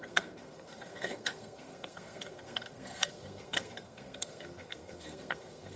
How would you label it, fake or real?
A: fake